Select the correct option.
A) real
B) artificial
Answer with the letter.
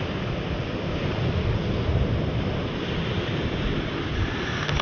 A